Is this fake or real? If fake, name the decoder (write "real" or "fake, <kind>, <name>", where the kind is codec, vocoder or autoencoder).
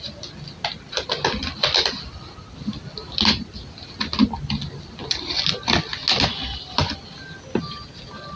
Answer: real